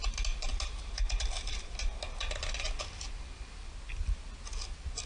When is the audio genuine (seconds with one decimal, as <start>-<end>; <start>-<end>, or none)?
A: 0.0-5.1